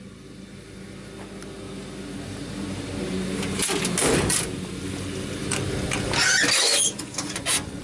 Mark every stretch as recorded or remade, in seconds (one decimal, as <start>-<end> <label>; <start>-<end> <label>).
0.0-6.6 recorded; 6.6-7.8 remade

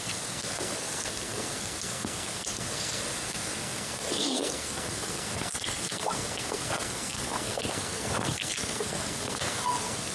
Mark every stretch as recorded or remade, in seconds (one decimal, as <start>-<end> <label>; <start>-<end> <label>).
0.0-10.1 remade

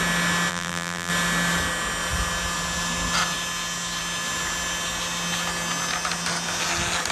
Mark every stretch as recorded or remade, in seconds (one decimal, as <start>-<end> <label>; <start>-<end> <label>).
0.0-0.5 recorded; 0.5-1.1 remade; 1.1-7.1 recorded

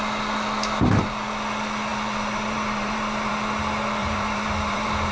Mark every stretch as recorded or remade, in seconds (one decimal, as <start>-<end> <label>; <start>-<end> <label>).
0.0-1.9 recorded; 1.9-3.3 remade; 3.3-4.0 recorded; 4.0-5.1 remade

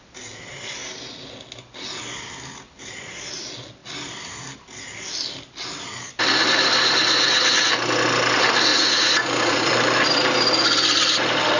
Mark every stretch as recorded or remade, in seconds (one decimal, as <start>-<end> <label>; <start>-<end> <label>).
0.0-8.7 recorded; 8.7-9.7 remade; 9.7-11.6 recorded